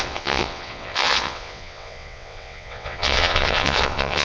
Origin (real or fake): fake